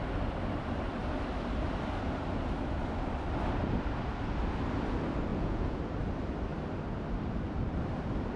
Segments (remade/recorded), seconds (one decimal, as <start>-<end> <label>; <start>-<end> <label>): 0.0-5.3 recorded; 5.3-5.8 remade; 5.8-8.4 recorded